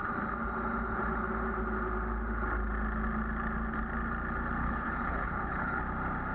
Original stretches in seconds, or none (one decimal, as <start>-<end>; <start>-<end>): 0.0-4.6; 5.8-6.3